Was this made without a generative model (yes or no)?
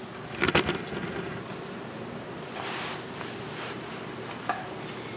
yes